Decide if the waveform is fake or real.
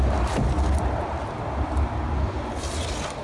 real